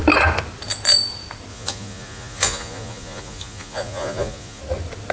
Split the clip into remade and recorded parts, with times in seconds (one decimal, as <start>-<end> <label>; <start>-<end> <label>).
0.0-1.5 recorded; 1.5-4.6 remade; 4.6-5.1 recorded